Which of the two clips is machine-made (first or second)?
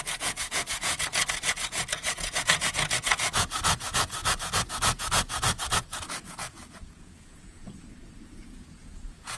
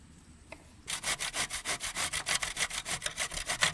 first